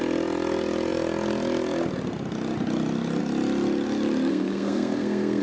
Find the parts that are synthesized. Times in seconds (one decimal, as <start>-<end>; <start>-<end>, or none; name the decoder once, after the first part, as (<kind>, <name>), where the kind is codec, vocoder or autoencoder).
4.3-5.4 (codec, SNAC)